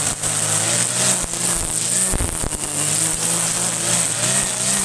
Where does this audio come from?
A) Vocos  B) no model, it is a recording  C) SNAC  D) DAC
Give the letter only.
B